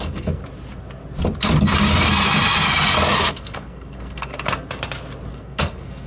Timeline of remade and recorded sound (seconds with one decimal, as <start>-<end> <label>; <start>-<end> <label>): 0.0-0.4 remade; 0.4-3.3 recorded; 3.3-4.3 remade; 4.3-5.3 recorded; 5.3-6.1 remade